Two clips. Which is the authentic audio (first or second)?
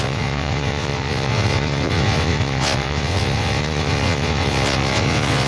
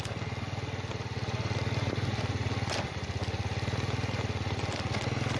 second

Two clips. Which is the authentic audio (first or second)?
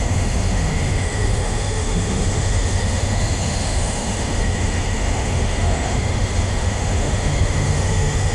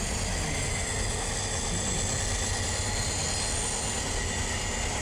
second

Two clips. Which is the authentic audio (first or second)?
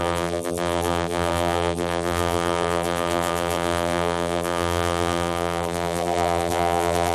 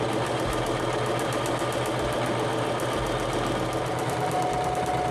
second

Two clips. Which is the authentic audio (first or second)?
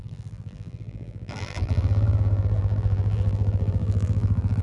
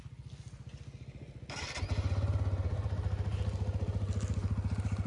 second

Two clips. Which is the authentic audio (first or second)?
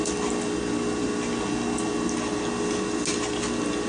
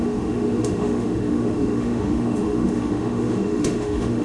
first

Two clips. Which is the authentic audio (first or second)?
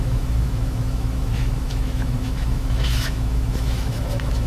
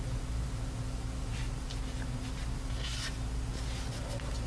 second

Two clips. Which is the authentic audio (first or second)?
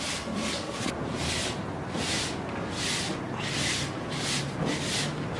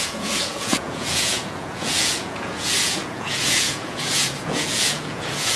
first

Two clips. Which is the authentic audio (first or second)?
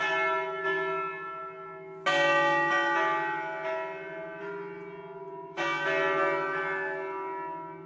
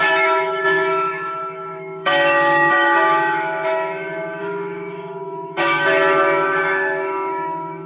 first